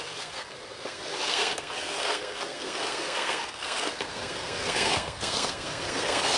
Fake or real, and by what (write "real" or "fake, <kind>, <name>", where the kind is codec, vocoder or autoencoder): fake, codec, SNAC